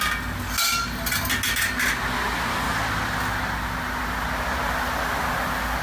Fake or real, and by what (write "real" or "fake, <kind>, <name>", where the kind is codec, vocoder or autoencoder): real